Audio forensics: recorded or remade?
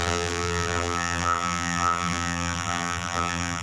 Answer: remade